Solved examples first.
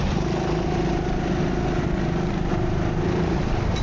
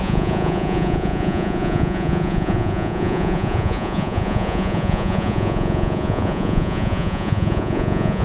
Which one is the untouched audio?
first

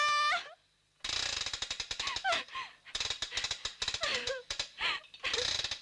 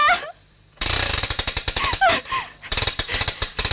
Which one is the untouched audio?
first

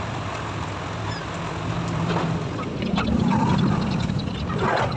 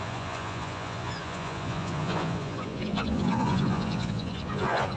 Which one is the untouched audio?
first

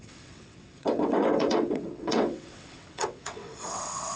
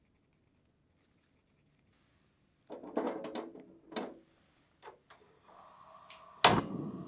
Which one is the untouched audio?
second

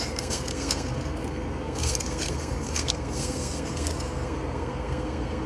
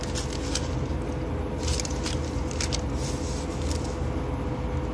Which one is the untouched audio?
second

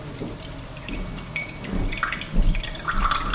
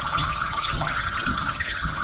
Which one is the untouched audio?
first